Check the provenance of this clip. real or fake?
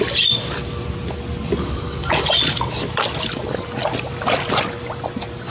real